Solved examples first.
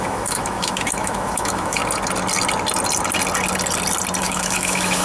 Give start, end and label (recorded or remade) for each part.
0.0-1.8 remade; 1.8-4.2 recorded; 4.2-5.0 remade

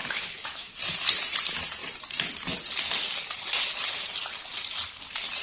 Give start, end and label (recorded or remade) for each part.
0.0-0.8 remade; 0.8-5.4 recorded

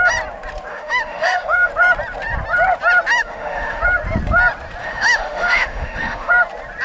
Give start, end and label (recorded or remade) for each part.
0.0-0.7 recorded; 0.7-1.7 remade; 1.7-3.2 recorded; 3.2-3.8 remade; 3.8-4.8 recorded; 4.8-6.3 remade; 6.3-6.8 recorded

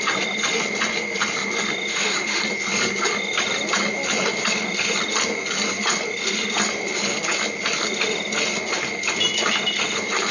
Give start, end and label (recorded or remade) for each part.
0.0-1.9 recorded; 1.9-2.4 remade; 2.4-10.3 recorded

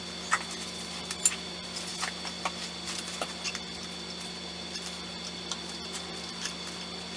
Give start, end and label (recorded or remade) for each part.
0.0-7.2 recorded

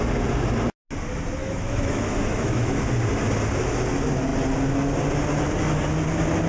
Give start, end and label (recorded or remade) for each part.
0.0-1.4 recorded; 1.4-2.8 remade; 2.8-6.5 recorded

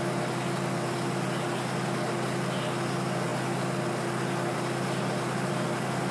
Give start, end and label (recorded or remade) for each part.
0.0-6.1 recorded

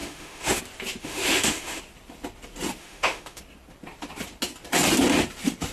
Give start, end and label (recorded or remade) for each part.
0.0-0.6 remade; 0.6-1.0 recorded; 1.0-1.8 remade; 1.8-2.8 recorded; 2.8-3.4 remade; 3.4-5.7 recorded